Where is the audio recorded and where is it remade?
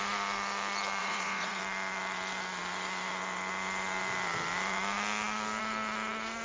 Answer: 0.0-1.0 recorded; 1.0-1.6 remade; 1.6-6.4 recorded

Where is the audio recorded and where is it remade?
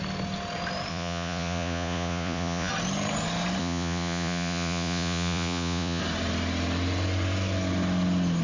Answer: 0.0-0.9 recorded; 0.9-2.7 remade; 2.7-3.6 recorded; 3.6-6.0 remade; 6.0-8.4 recorded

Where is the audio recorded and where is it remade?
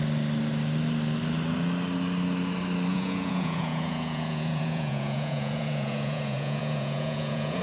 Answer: 0.0-2.9 recorded; 2.9-7.6 remade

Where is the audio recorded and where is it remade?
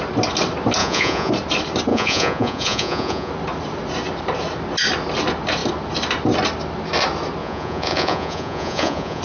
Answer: 0.0-0.8 recorded; 0.8-1.3 remade; 1.3-1.9 recorded; 1.9-3.3 remade; 3.3-7.4 recorded; 7.4-9.2 remade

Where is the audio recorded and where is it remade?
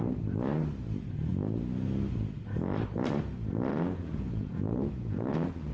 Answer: 0.0-3.7 recorded; 3.7-5.7 remade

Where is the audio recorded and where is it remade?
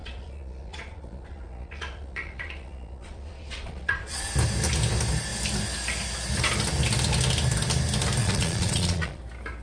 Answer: 0.0-4.3 remade; 4.3-8.2 recorded; 8.2-9.2 remade; 9.2-9.6 recorded